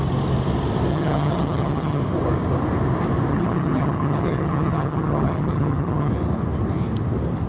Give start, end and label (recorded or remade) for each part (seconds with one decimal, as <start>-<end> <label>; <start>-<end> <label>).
0.0-0.9 recorded; 0.9-2.0 remade; 2.0-3.3 recorded; 3.3-6.1 remade; 6.1-7.5 recorded